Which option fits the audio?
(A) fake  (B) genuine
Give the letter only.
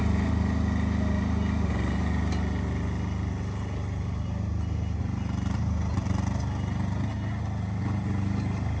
B